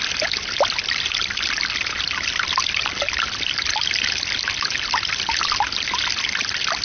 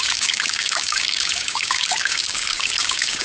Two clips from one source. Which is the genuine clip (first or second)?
first